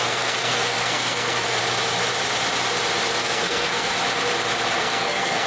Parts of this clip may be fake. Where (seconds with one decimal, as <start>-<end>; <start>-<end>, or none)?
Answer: 0.0-1.6; 3.2-4.0; 4.8-5.5